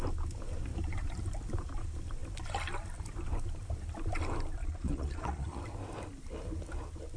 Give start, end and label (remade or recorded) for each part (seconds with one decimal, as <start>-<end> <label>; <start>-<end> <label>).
0.0-4.6 recorded; 4.6-5.6 remade; 5.6-7.2 recorded